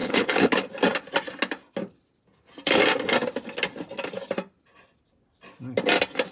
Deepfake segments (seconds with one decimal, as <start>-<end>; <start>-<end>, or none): 0.0-0.5